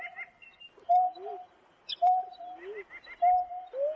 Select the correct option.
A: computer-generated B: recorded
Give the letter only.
B